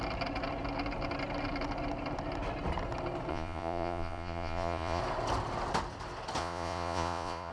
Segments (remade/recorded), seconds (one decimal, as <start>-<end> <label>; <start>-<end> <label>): 0.0-3.3 recorded; 3.3-5.0 remade; 5.0-6.4 recorded; 6.4-7.5 remade